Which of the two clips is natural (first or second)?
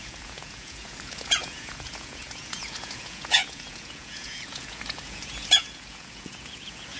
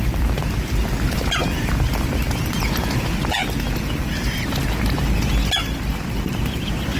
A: second